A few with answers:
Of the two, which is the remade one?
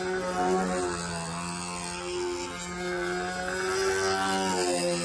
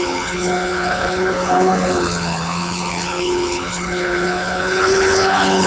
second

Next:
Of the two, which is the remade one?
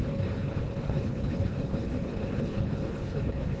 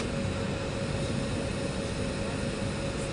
first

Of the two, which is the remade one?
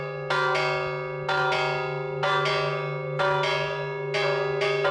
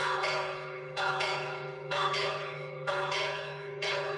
second